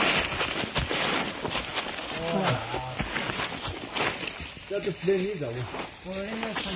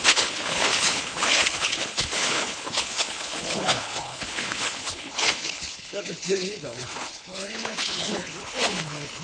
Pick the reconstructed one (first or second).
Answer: second